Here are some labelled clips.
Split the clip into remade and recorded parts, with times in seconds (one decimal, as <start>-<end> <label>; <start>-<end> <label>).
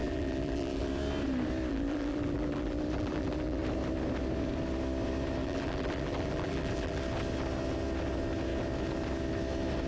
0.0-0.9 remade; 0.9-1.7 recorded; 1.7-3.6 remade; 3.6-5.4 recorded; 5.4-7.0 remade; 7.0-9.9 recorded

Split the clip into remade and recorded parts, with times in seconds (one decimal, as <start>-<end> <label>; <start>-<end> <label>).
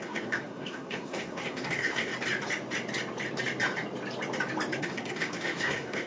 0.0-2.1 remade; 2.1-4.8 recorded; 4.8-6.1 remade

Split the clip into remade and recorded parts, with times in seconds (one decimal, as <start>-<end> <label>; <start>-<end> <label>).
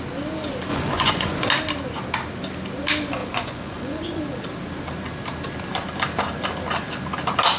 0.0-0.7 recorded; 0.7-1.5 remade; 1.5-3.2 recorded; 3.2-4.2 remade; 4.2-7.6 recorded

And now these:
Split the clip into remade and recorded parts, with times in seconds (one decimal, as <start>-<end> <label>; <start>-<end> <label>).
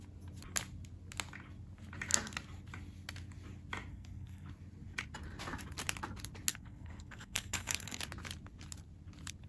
0.0-3.9 recorded; 3.9-4.5 remade; 4.5-6.5 recorded; 6.5-8.0 remade; 8.0-9.5 recorded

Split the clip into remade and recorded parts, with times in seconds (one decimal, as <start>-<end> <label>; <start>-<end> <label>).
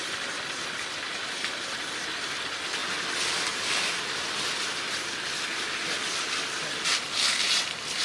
0.0-0.8 recorded; 0.8-2.8 remade; 2.8-3.5 recorded; 3.5-8.0 remade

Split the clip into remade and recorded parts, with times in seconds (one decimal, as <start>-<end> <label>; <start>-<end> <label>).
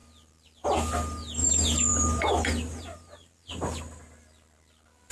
0.0-5.1 recorded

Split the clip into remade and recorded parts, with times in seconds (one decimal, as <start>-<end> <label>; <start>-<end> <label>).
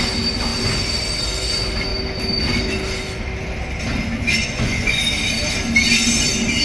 0.0-4.4 recorded; 4.4-5.0 remade; 5.0-6.6 recorded